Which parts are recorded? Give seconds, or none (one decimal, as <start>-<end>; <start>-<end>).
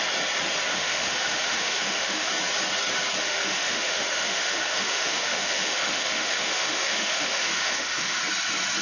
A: 0.0-0.7; 2.3-3.2; 8.2-8.8